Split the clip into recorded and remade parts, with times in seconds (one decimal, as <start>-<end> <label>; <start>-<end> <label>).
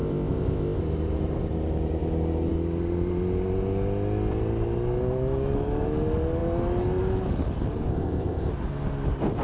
0.0-0.8 remade; 0.8-7.9 recorded; 7.9-8.5 remade; 8.5-9.4 recorded